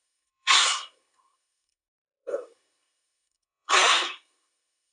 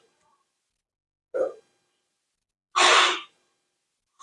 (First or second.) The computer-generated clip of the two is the first